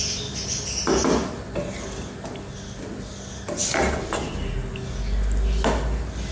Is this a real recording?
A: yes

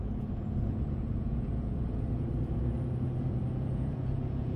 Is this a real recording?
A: no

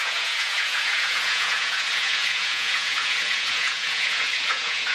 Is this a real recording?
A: no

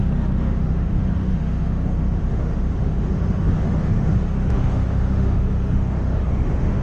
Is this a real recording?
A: no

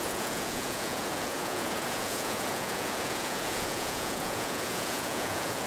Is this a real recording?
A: no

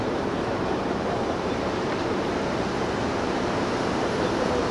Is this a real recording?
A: no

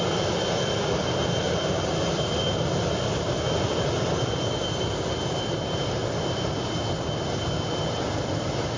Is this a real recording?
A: yes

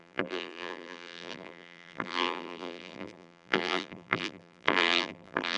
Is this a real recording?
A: no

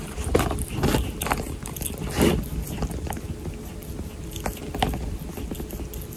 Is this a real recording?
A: yes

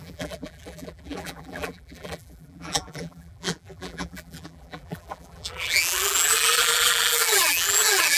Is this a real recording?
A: no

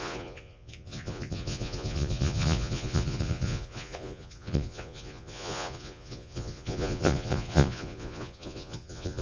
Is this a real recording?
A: no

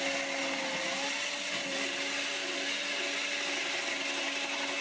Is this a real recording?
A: yes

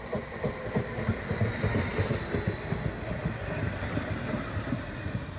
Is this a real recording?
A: yes